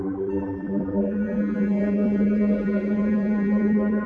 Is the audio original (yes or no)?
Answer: no